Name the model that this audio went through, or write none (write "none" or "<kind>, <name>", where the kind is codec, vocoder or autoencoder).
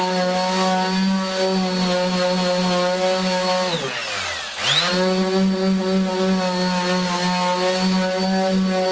none